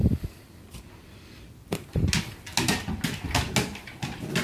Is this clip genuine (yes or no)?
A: yes